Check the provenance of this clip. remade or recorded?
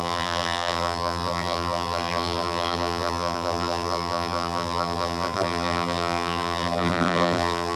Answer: remade